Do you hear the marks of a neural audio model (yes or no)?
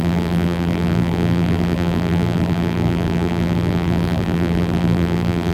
yes